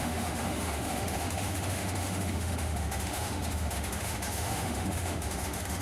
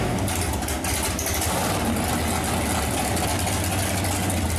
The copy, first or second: first